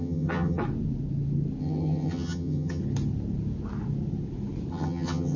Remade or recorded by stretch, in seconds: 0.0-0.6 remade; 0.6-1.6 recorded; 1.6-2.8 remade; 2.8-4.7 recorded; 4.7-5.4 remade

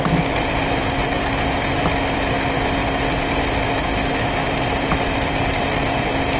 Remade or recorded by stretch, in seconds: 0.0-6.4 recorded

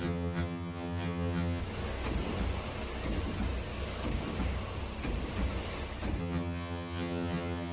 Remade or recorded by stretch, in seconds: 0.0-1.6 remade; 1.6-6.2 recorded; 6.2-7.7 remade

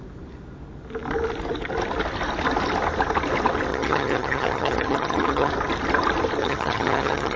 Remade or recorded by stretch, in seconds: 0.0-3.7 recorded; 3.7-5.5 remade; 5.5-6.4 recorded; 6.4-7.4 remade